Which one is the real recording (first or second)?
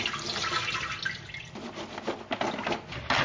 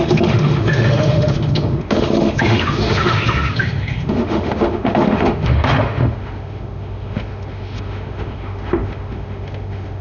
first